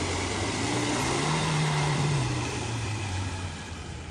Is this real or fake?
fake